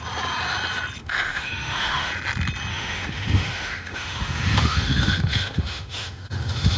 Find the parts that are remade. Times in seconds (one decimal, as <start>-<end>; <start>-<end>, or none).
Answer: 1.0-2.1; 2.7-6.8